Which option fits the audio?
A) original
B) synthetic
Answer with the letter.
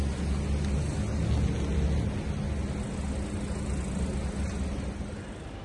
A